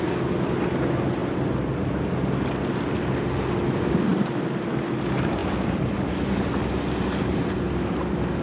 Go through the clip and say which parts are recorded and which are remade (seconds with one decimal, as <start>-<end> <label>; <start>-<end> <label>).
0.0-4.1 recorded; 4.1-4.7 remade; 4.7-8.4 recorded